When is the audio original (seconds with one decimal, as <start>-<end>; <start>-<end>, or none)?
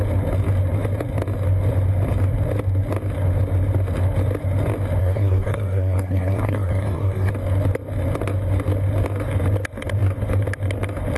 0.0-5.0; 7.3-11.2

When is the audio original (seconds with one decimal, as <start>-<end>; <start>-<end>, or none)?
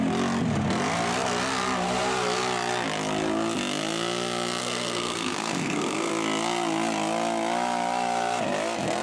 0.0-4.6; 6.1-9.0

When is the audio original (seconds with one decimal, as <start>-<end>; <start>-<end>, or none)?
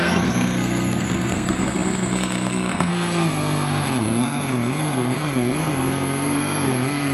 none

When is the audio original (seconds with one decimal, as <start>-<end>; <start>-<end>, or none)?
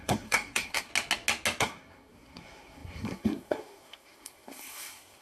0.9-1.6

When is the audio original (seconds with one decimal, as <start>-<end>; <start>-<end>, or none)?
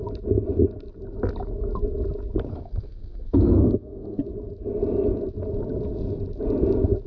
0.0-2.5; 4.2-7.1